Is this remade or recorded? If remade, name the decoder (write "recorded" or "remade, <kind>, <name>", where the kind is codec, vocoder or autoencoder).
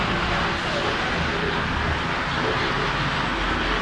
recorded